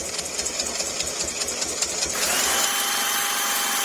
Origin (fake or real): real